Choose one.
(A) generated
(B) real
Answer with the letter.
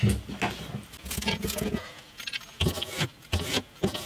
B